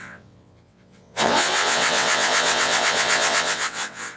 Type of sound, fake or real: fake